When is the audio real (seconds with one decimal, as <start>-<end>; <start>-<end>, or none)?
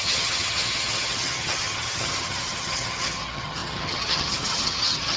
none